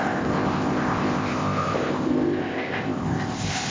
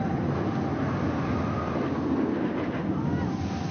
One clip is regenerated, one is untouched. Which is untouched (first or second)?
second